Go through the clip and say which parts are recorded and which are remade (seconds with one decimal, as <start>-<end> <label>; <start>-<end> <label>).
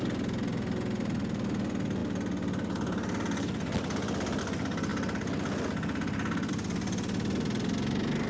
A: 0.0-8.3 recorded